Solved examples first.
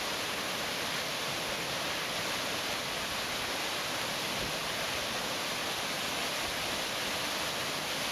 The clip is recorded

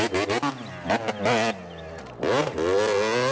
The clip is recorded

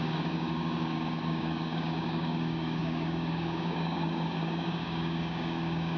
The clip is remade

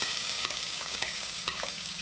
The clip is remade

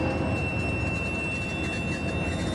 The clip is recorded